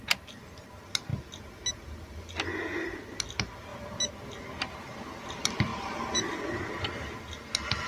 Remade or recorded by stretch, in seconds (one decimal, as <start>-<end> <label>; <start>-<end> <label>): 0.0-5.7 recorded; 5.7-7.9 remade